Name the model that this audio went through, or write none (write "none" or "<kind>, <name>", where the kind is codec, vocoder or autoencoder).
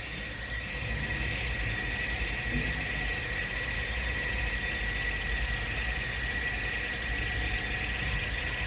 none